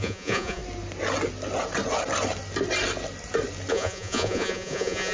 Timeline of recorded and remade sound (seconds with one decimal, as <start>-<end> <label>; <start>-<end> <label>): 0.0-0.6 remade; 0.6-3.7 recorded; 3.7-5.1 remade